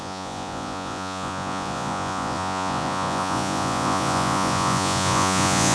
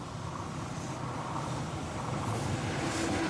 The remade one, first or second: first